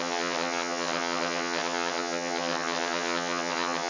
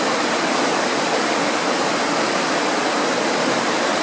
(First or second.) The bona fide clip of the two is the second